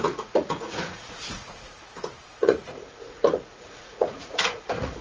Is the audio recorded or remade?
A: remade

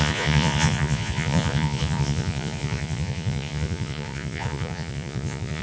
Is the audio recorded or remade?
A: remade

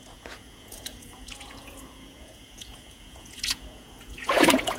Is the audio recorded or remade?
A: remade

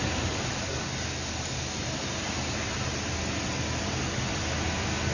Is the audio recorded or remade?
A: recorded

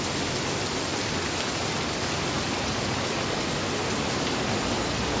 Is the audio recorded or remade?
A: recorded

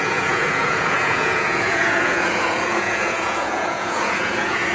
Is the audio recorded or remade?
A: remade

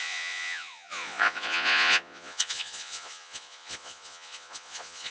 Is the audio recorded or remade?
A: remade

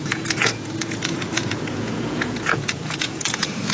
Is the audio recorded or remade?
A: remade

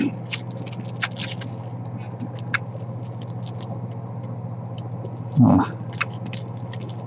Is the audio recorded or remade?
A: recorded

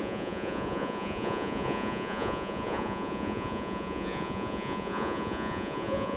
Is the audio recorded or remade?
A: remade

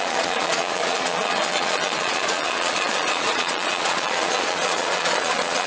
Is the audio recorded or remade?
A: remade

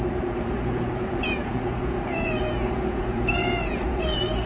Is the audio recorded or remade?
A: remade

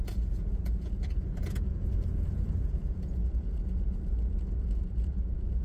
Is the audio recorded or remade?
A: remade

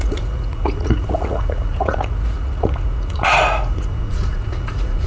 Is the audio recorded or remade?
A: remade